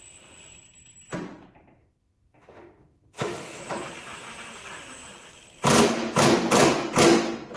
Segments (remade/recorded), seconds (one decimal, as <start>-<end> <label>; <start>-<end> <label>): 0.0-1.8 recorded; 1.8-3.6 remade; 3.6-7.6 recorded